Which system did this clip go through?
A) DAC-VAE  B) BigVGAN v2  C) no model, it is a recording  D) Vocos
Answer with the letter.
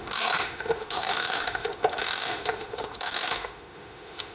A